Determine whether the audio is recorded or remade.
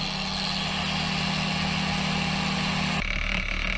recorded